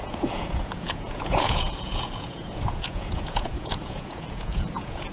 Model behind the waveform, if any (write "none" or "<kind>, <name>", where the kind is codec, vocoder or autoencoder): vocoder, Vocos